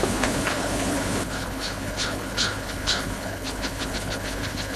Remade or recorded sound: remade